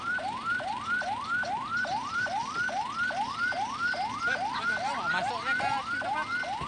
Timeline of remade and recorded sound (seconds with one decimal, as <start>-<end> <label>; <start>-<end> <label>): 0.0-2.4 remade; 2.4-6.7 recorded